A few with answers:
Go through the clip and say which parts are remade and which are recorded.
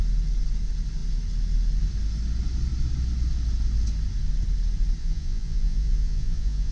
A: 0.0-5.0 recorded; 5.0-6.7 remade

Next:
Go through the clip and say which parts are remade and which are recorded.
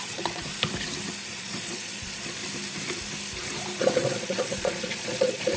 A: 0.0-0.5 remade; 0.5-1.3 recorded; 1.3-2.4 remade; 2.4-3.8 recorded; 3.8-5.6 remade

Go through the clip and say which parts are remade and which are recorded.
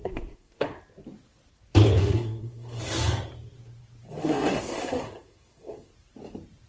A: 0.0-0.8 remade; 0.8-2.0 recorded; 2.0-2.8 remade; 2.8-4.2 recorded; 4.2-5.9 remade; 5.9-6.7 recorded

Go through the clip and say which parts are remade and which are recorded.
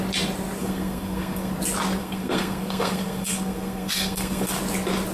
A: 0.0-0.6 recorded; 0.6-1.5 remade; 1.5-2.0 recorded; 2.0-4.6 remade; 4.6-5.1 recorded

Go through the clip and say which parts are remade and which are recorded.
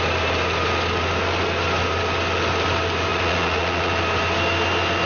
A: 0.0-3.1 recorded; 3.1-3.9 remade; 3.9-5.1 recorded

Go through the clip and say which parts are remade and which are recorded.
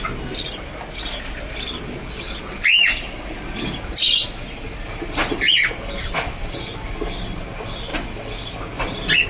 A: 0.0-9.3 recorded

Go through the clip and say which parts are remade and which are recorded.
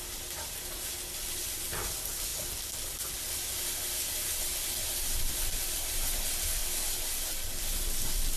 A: 0.0-2.3 remade; 2.3-5.3 recorded; 5.3-6.6 remade; 6.6-7.6 recorded; 7.6-8.4 remade